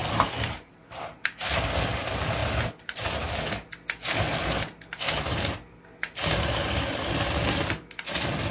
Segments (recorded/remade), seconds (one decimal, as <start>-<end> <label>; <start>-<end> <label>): 0.0-8.5 recorded